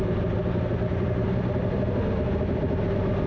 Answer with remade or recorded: recorded